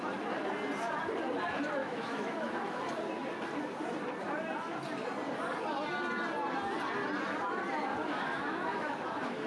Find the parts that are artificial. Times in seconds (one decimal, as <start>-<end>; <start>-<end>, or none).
1.8-2.8; 7.9-9.5